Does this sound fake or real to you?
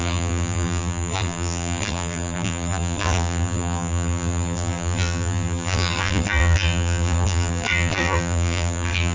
fake